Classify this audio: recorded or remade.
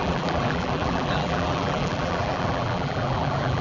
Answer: remade